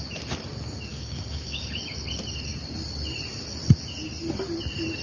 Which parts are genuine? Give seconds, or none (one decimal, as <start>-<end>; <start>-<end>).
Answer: 0.0-0.9; 1.6-5.0